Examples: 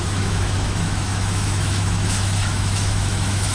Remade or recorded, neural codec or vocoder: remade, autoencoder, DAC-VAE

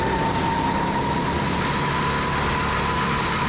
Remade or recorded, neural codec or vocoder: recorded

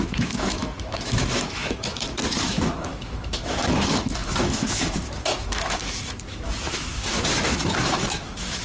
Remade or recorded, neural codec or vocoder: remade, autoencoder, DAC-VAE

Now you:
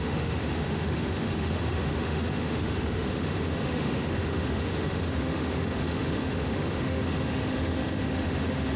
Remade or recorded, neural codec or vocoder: remade, autoencoder, DAC-VAE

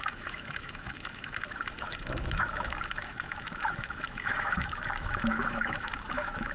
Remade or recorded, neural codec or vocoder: remade, autoencoder, DAC-VAE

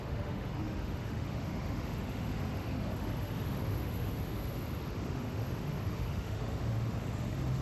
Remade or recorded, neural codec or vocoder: remade, autoencoder, DAC-VAE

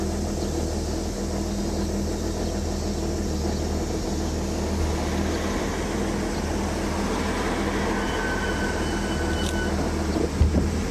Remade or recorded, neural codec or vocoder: recorded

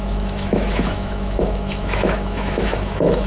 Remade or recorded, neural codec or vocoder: remade, autoencoder, DAC-VAE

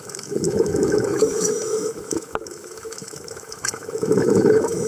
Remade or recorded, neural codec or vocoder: remade, autoencoder, DAC-VAE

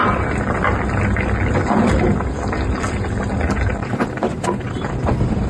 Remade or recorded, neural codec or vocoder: recorded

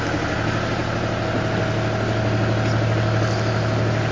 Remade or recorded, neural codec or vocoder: recorded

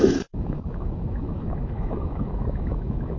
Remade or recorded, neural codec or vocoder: remade, autoencoder, DAC-VAE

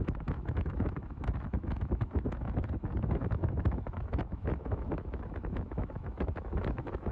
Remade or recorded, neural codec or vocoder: remade, autoencoder, DAC-VAE